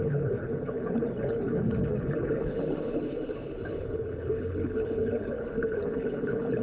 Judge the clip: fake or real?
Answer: fake